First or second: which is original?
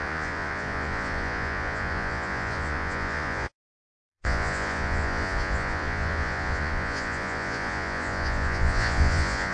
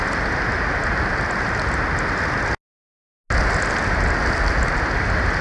second